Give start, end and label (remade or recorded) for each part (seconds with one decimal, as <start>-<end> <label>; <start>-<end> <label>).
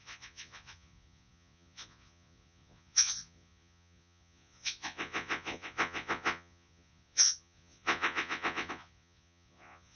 0.0-10.0 remade